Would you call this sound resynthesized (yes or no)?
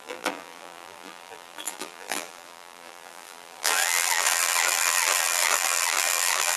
yes